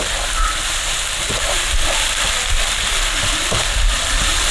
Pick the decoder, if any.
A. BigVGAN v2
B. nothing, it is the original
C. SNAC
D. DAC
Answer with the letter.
A